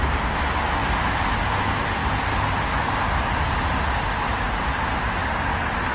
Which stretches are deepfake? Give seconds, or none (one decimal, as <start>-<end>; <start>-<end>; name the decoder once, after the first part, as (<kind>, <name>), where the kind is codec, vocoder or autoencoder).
none